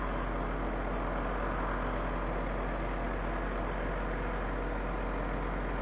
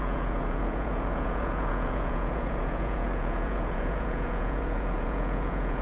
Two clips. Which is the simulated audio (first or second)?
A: second